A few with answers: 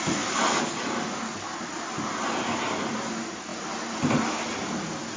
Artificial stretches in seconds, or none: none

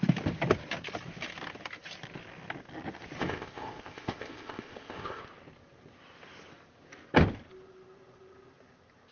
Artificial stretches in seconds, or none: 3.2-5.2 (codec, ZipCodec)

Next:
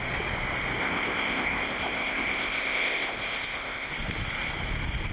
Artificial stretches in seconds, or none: 0.8-3.9 (codec, ZipCodec)

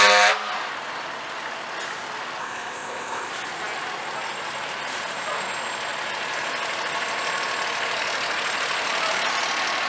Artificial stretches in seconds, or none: 2.4-3.3 (codec, ZipCodec)

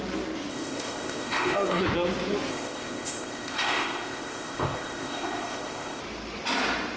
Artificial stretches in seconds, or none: 0.5-1.8 (codec, ZipCodec); 2.5-6.0